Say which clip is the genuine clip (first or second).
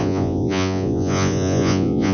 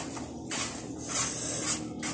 second